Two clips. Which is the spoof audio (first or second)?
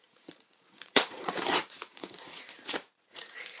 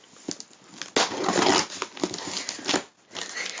first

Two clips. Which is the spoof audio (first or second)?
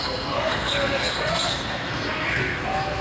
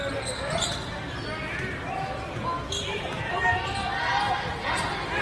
first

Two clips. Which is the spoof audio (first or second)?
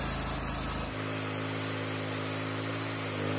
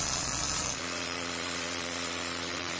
second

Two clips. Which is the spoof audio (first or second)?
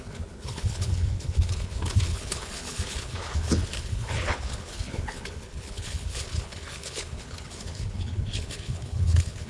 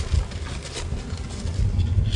first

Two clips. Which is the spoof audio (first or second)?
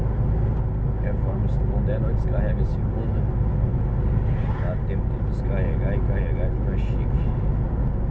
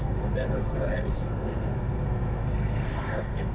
second